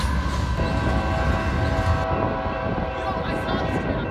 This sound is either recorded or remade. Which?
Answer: recorded